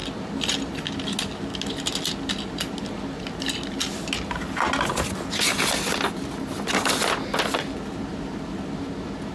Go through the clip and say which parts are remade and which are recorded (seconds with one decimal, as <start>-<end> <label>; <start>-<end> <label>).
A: 0.0-9.3 recorded